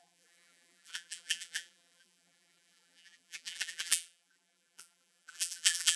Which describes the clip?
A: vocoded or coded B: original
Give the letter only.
A